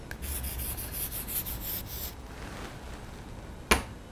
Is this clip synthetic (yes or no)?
no